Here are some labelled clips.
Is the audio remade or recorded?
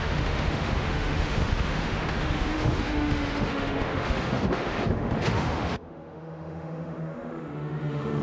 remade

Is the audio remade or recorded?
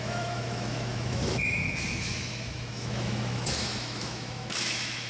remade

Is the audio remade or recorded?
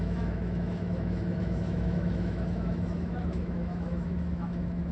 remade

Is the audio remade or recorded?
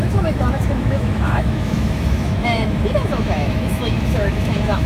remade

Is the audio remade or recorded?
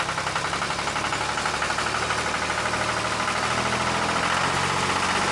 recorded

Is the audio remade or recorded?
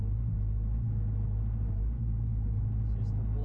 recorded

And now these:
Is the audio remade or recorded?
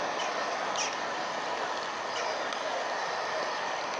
recorded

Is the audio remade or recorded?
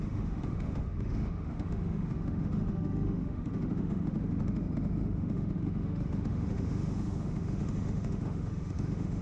remade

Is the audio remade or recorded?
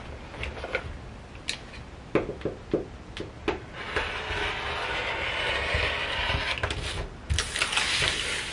recorded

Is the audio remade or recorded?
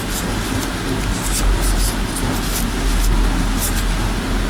recorded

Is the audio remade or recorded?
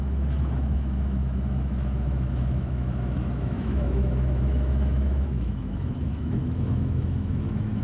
remade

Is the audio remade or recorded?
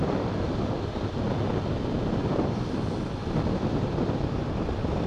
recorded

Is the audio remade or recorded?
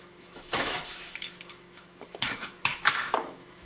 remade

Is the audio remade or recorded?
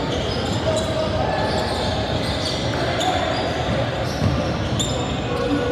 recorded